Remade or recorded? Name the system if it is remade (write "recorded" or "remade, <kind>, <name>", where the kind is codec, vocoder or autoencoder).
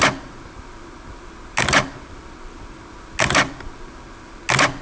recorded